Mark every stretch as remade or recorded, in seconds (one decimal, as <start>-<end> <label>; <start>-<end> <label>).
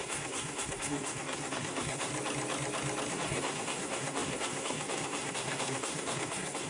0.0-2.1 remade; 2.1-3.1 recorded; 3.1-6.7 remade